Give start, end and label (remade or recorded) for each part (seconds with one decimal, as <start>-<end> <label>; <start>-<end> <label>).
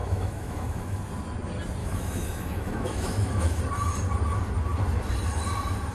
0.0-1.0 remade; 1.0-1.8 recorded; 1.8-3.6 remade; 3.6-5.9 recorded